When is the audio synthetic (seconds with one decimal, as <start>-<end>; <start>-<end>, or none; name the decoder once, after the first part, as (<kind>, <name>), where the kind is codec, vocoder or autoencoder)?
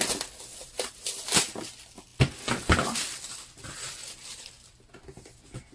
0.6-1.7 (vocoder, BigVGAN v2)